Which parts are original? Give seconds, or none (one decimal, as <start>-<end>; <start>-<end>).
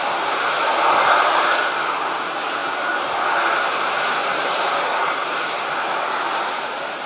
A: none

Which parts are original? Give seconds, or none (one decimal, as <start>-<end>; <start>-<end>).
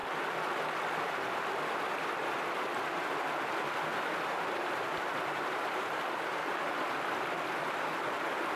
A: 0.0-4.3; 6.4-8.6